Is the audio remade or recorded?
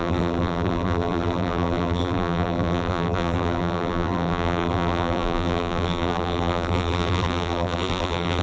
remade